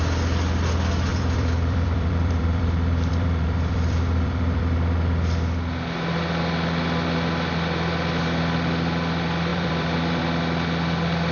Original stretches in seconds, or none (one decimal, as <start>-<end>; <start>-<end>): 0.0-1.1; 4.6-9.5; 10.2-11.3